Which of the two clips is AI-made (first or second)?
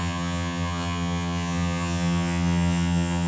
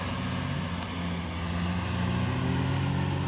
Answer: first